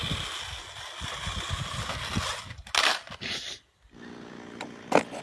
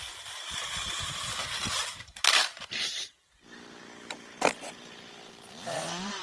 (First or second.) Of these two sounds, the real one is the first